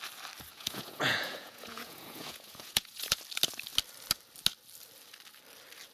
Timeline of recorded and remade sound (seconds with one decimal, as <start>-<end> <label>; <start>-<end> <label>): 0.0-0.5 recorded; 0.5-3.2 remade; 3.2-5.9 recorded